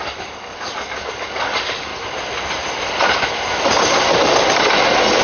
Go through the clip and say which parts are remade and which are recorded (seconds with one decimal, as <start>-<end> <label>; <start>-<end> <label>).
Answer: 0.0-1.9 remade; 1.9-5.2 recorded